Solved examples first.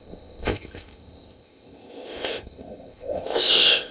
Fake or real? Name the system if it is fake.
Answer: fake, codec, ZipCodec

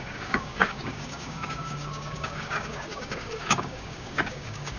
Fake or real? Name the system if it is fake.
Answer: fake, codec, DAC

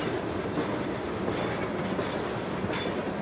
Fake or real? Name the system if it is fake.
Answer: real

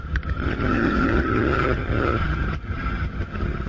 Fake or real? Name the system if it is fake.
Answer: fake, vocoder, HiFi-GAN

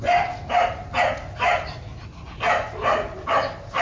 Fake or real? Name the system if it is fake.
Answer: real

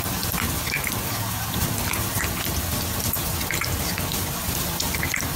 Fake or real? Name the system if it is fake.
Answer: real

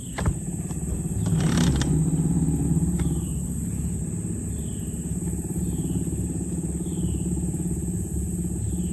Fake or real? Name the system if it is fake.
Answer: real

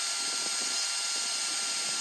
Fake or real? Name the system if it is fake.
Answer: real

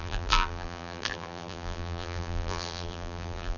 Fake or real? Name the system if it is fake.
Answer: fake, vocoder, BigVGAN v2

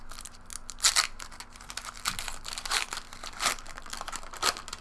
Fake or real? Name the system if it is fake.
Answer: real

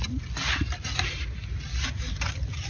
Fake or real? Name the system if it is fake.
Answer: real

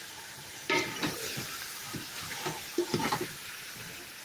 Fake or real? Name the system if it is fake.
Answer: fake, vocoder, BigVGAN v2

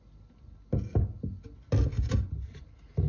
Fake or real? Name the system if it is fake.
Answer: real